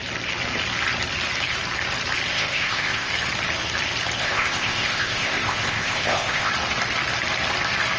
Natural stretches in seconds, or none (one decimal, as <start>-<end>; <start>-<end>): 0.0-2.3; 3.1-4.2; 6.5-8.0